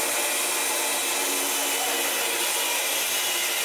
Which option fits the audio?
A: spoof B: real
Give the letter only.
B